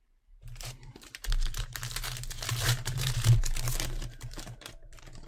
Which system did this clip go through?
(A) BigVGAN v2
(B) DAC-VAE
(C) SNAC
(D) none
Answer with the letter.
A